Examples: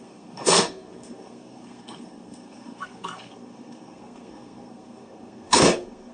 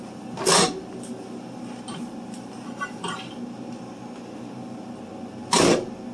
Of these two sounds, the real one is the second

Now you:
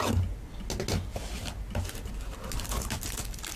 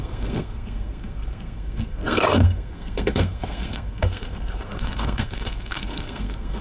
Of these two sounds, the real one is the first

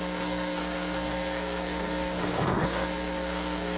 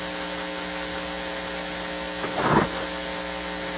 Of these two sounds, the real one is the second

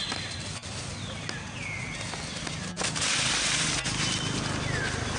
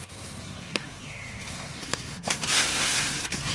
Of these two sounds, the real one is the first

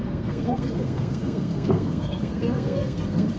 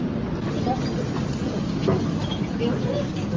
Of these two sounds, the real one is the second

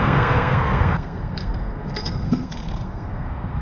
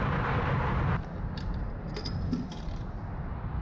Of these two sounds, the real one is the second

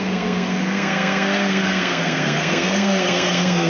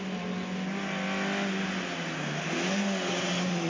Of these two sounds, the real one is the second